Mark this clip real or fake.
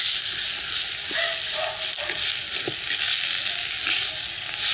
real